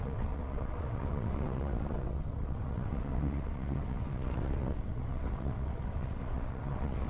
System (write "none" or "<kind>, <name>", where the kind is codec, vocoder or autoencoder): vocoder, WaveNeXt